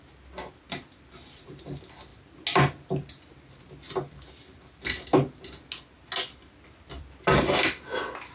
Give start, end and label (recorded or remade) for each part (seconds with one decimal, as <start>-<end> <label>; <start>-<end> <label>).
0.0-8.3 recorded